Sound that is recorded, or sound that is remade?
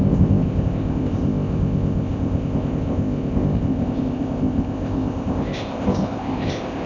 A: remade